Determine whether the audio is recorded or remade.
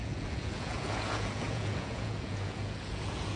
remade